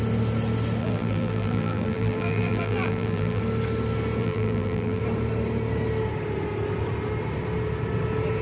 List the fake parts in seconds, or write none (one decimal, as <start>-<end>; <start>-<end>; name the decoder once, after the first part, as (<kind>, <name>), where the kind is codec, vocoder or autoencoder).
0.8-3.4 (vocoder, BigVGAN v2); 4.2-5.0